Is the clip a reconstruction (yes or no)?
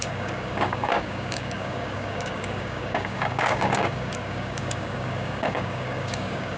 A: yes